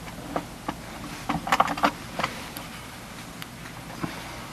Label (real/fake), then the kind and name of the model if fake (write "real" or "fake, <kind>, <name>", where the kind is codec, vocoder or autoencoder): real